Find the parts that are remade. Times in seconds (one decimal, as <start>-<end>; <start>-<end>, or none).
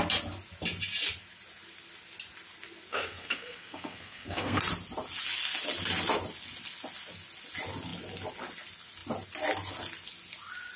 2.9-4.6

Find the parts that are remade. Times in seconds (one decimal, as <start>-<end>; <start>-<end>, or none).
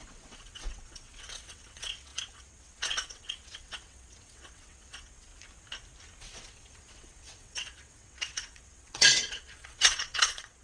0.0-5.3; 6.2-10.6